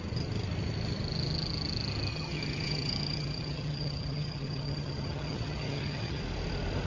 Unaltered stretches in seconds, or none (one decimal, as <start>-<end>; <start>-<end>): 0.0-2.1; 6.2-6.9